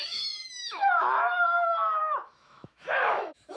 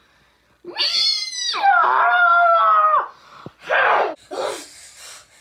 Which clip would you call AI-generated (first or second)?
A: first